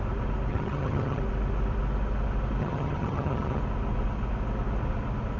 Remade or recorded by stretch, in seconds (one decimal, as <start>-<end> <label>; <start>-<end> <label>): 0.0-0.5 recorded; 0.5-1.2 remade; 1.2-2.6 recorded; 2.6-3.6 remade; 3.6-5.4 recorded